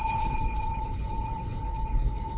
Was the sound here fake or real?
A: fake